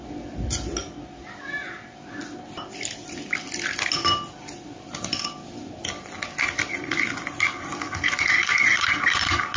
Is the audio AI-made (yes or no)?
no